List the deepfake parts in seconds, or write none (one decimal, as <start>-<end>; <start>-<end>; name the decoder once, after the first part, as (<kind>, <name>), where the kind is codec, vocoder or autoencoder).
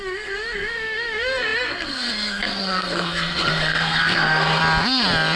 0.0-4.6 (codec, SNAC)